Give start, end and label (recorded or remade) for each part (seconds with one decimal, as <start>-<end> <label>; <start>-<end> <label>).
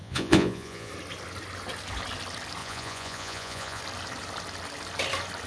0.0-0.9 remade; 0.9-2.6 recorded; 2.6-3.8 remade; 3.8-5.5 recorded